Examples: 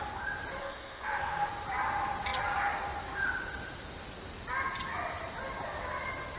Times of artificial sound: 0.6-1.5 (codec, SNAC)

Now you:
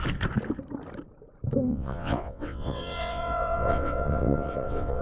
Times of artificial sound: 1.7-5.0 (vocoder, WaveNeXt)

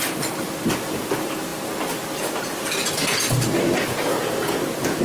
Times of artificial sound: none